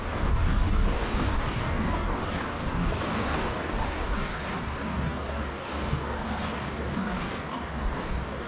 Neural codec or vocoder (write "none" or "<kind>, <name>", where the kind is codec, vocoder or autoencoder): codec, DAC